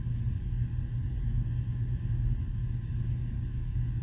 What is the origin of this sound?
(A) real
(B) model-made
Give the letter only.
A